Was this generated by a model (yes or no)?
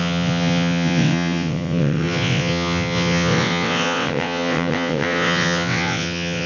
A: yes